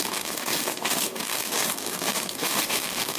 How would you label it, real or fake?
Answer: fake